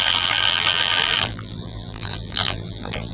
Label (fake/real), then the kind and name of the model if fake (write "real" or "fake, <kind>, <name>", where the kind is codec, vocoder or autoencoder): fake, vocoder, BigVGAN v2